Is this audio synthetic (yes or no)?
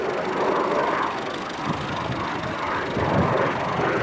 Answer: no